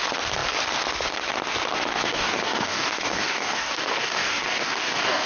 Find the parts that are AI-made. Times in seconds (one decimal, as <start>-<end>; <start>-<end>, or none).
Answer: 1.9-5.3